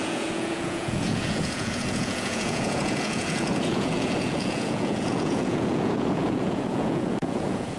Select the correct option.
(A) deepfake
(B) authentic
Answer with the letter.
A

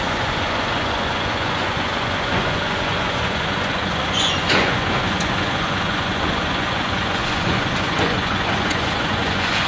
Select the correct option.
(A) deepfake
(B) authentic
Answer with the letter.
A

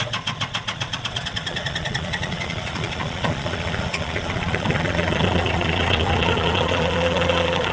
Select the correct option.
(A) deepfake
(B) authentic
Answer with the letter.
A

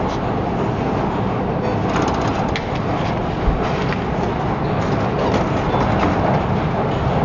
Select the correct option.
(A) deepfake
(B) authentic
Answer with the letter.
B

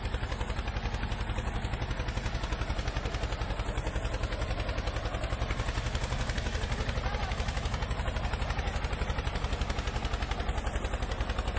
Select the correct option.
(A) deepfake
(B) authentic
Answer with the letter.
B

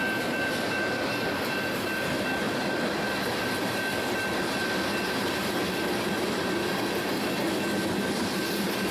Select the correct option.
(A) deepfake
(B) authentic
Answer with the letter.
B